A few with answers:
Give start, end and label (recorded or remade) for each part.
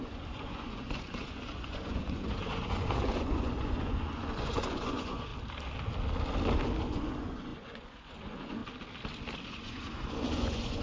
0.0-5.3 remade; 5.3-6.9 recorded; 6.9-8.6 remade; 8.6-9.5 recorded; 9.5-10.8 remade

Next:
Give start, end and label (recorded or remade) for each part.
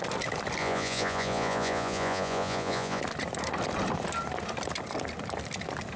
0.0-0.6 recorded; 0.6-3.0 remade; 3.0-6.0 recorded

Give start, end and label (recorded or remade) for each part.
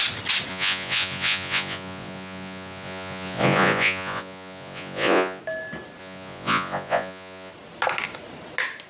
0.0-0.5 recorded; 0.5-5.4 remade; 5.4-6.0 recorded; 6.0-7.5 remade; 7.5-8.9 recorded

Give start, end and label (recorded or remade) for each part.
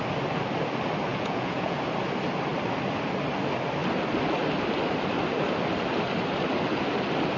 0.0-1.1 recorded; 1.1-1.8 remade; 1.8-7.4 recorded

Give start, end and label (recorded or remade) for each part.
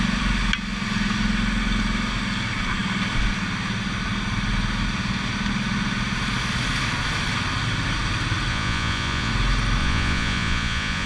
0.0-8.5 recorded; 8.5-9.3 remade; 9.3-9.8 recorded; 9.8-11.1 remade